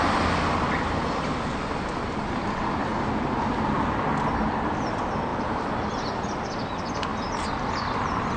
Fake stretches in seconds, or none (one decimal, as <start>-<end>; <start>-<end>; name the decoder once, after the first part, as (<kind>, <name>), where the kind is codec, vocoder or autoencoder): none